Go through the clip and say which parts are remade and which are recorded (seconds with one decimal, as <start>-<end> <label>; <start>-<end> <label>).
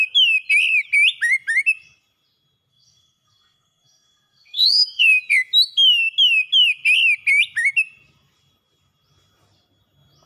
0.0-2.7 recorded; 2.7-5.2 remade; 5.2-10.3 recorded